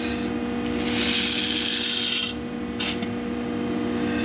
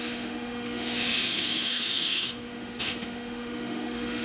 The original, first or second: first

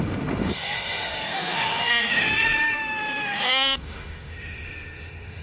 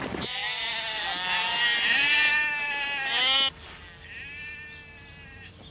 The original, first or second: second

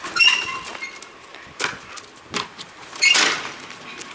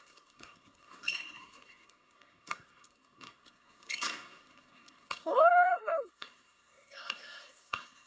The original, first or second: first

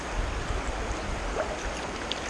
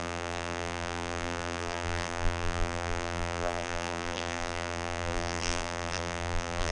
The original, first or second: first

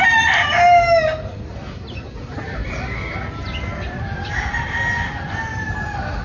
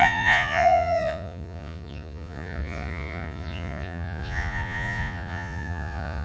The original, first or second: first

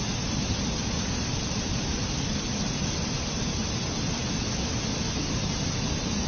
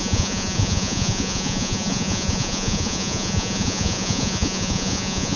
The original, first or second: first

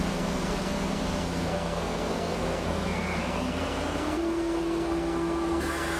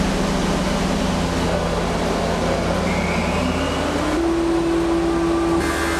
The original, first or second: second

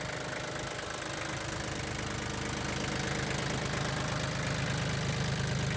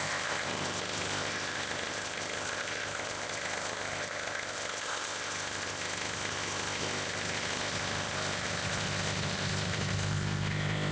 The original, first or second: first